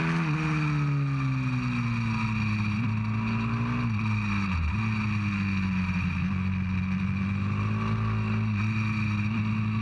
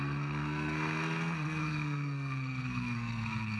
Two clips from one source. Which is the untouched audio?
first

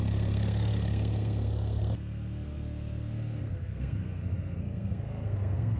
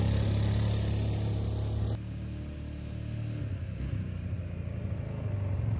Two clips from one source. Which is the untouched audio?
second